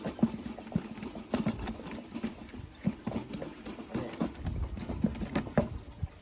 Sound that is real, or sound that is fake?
fake